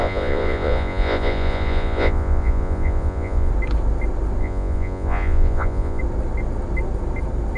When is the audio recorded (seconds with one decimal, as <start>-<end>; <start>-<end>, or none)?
3.5-4.4; 6.0-7.6